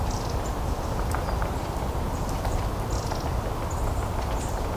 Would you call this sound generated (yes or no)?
no